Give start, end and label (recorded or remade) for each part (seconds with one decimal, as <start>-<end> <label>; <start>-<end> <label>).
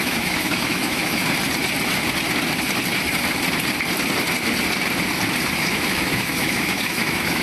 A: 0.0-1.2 remade; 1.2-5.6 recorded; 5.6-7.4 remade